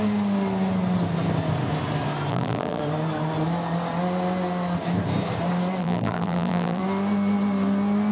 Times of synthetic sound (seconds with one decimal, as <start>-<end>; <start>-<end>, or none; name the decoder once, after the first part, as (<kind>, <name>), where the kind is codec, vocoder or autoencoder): 2.3-2.8 (vocoder, BigVGAN v2); 5.8-6.8